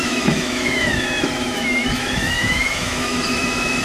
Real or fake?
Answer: fake